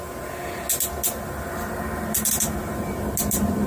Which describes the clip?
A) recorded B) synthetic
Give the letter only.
A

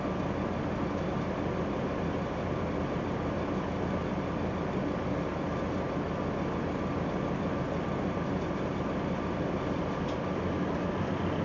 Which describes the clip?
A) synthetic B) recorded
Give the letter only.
B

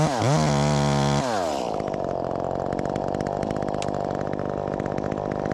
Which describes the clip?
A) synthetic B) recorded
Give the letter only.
B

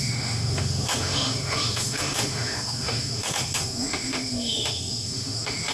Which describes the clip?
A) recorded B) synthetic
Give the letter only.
B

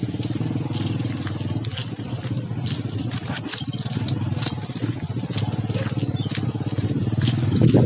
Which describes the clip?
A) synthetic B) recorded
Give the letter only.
B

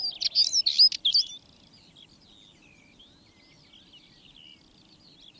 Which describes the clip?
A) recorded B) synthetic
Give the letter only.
A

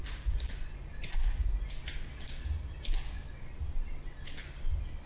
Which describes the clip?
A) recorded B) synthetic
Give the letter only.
A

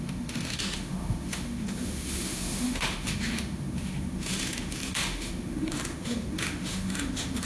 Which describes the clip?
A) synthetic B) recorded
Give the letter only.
A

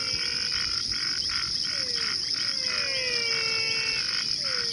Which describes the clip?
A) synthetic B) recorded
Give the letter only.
B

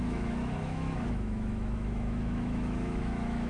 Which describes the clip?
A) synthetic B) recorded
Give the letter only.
A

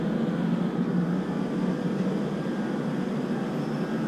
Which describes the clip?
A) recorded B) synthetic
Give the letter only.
A